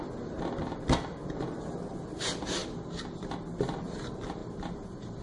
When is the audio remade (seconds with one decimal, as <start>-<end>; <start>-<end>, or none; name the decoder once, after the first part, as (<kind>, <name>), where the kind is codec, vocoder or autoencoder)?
4.4-5.2 (vocoder, BigVGAN v2)